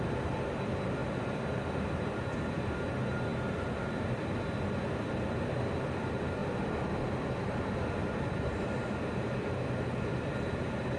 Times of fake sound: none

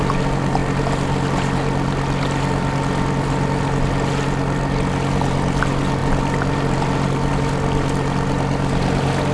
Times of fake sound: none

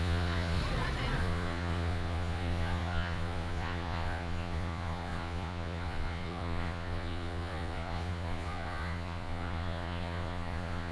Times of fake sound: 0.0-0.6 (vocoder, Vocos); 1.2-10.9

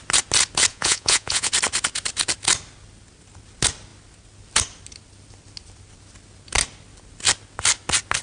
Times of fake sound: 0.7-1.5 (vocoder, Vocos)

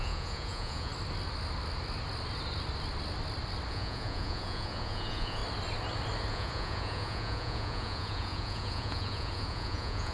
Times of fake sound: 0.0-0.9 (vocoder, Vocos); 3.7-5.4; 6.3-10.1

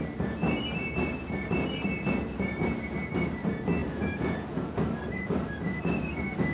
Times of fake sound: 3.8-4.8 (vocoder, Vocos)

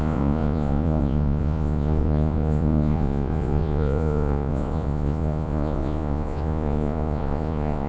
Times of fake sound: 0.0-7.9 (vocoder, Vocos)